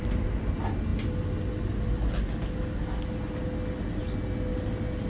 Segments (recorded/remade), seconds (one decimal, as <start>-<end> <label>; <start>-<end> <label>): 0.0-5.1 recorded